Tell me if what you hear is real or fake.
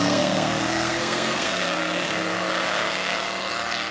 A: fake